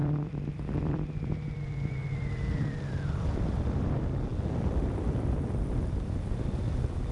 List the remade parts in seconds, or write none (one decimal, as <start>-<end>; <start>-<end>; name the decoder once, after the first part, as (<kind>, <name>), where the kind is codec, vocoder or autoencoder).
0.0-7.1 (vocoder, BigVGAN v2)